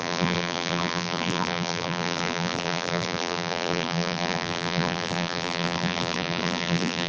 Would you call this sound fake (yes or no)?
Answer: yes